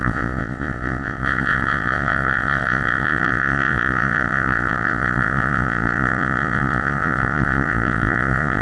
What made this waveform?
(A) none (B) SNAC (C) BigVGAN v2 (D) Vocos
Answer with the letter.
D